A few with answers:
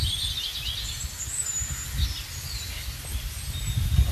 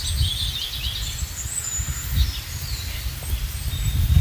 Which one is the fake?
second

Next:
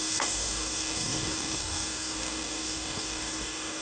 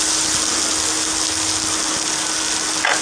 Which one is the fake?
first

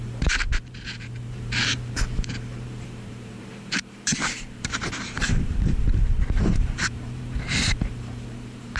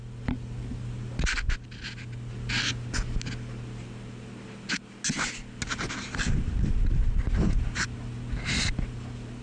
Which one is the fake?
first